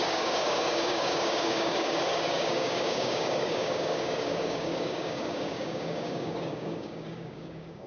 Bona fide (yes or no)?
no